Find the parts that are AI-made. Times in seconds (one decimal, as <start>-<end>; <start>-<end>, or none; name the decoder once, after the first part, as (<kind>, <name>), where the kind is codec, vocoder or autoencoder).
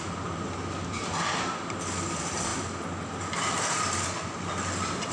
none